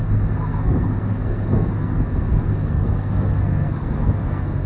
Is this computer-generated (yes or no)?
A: yes